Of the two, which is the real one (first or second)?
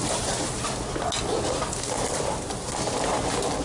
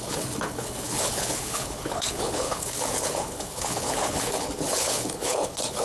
first